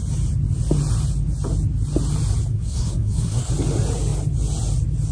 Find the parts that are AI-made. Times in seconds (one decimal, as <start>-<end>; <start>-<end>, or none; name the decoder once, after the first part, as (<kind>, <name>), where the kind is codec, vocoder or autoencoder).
2.5-3.5 (codec, SNAC)